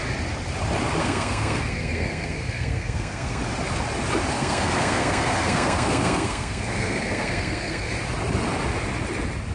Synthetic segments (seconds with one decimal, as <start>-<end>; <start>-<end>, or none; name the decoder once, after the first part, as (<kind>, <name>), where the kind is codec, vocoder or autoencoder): 1.0-3.4 (codec, SNAC); 4.3-7.9